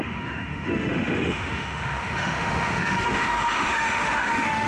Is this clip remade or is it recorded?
remade